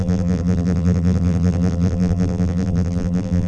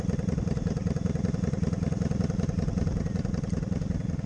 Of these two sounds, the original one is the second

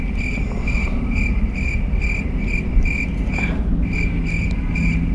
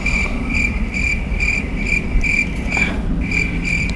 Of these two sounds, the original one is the first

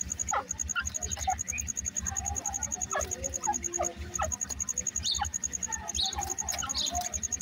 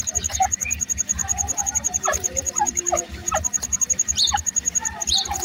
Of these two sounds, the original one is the first